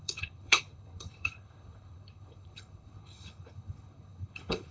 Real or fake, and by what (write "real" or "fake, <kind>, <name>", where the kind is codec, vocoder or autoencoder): fake, codec, HILCodec